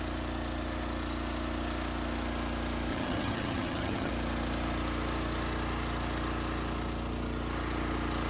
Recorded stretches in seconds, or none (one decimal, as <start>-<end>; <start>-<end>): 0.0-2.9; 4.1-8.3